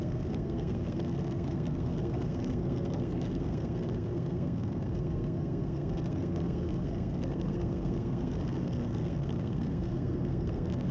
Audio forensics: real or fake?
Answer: fake